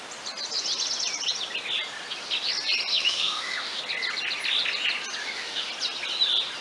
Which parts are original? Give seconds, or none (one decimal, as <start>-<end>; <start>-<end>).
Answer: 0.0-2.9; 3.8-5.2; 5.7-6.6